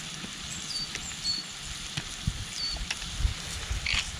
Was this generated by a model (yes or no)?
no